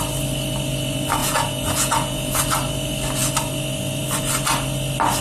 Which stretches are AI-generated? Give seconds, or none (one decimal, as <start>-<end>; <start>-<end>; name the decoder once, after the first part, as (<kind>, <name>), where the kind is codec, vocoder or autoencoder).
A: 1.2-2.4 (vocoder, Vocos)